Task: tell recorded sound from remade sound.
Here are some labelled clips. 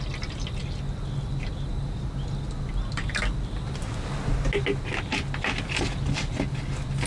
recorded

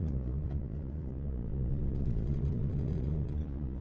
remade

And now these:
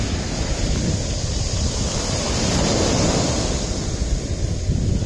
recorded